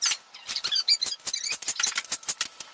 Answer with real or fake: real